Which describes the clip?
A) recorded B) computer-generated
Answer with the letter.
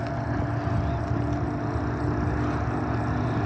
A